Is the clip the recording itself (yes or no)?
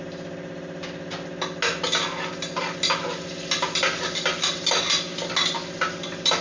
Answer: yes